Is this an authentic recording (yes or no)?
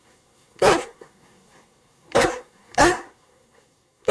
no